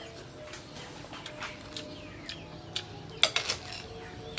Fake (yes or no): no